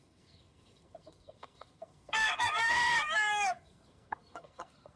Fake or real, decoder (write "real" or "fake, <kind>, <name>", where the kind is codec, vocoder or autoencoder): fake, codec, SNAC